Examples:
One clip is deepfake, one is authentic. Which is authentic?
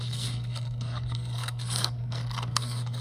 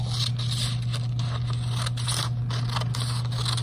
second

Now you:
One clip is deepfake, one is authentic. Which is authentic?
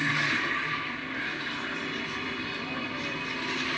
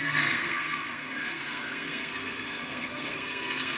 first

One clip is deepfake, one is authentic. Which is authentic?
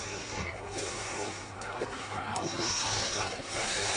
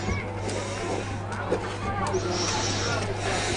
second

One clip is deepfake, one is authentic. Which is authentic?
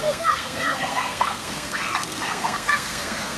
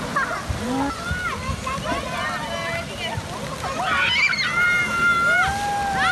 second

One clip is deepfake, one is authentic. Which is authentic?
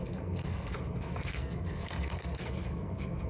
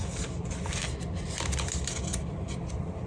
second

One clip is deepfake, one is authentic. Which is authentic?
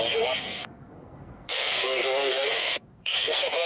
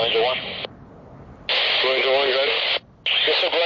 second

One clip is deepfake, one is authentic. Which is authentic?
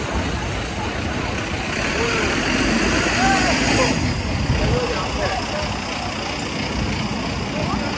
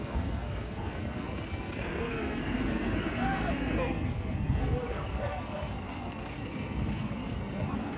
first